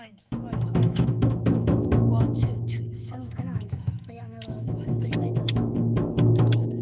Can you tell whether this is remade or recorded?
remade